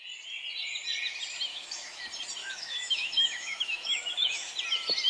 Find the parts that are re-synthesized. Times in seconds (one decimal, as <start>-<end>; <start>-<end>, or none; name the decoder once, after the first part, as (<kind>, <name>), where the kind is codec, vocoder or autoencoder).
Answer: 1.5-2.0 (autoencoder, DAC-VAE); 2.4-4.5